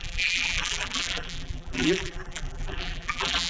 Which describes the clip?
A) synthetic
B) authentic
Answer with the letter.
A